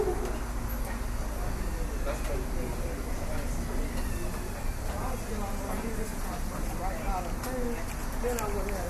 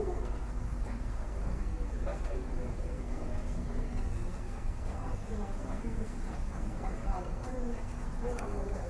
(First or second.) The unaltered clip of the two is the first